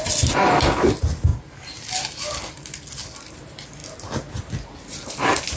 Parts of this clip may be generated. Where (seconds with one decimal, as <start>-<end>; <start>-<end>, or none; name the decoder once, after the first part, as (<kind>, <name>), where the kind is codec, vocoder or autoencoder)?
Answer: none